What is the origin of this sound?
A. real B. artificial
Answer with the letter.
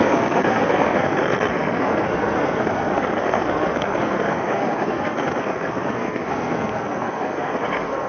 B